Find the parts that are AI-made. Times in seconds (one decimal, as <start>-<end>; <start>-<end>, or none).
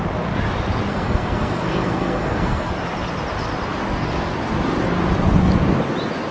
0.9-2.7